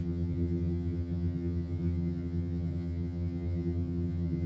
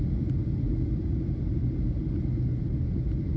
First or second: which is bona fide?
second